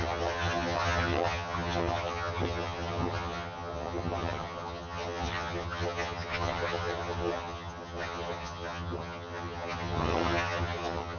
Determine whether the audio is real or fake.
fake